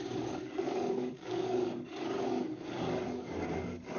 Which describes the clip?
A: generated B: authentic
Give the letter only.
A